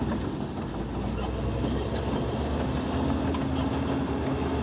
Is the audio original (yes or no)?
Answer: yes